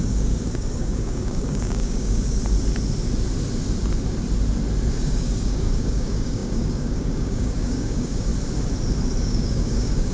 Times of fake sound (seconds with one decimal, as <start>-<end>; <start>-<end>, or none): 0.0-2.4; 4.9-8.3; 9.2-10.1